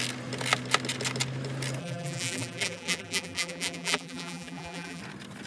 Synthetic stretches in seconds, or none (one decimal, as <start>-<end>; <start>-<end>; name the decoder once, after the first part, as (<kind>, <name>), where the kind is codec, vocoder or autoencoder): 1.8-5.0 (vocoder, BigVGAN v2)